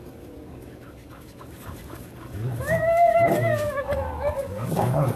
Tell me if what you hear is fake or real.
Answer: fake